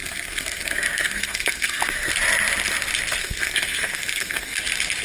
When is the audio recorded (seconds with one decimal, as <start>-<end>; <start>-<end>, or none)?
2.1-3.2; 4.6-5.0